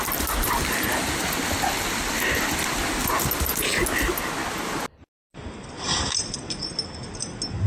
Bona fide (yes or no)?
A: yes